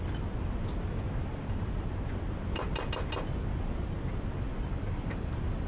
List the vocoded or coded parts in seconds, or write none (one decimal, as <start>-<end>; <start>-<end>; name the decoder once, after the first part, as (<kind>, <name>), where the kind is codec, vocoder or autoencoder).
4.5-5.7 (vocoder, BigVGAN v2)